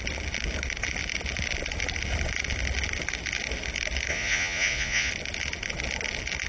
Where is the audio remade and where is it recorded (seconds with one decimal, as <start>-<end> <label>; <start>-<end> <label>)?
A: 0.0-4.1 recorded; 4.1-5.1 remade; 5.1-6.5 recorded